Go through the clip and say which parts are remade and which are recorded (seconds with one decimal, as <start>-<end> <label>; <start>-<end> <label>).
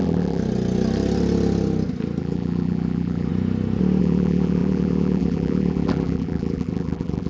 0.0-0.4 remade; 0.4-2.2 recorded; 2.2-3.3 remade; 3.3-4.0 recorded; 4.0-7.3 remade